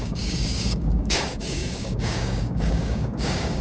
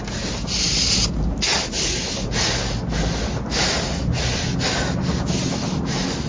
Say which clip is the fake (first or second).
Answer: first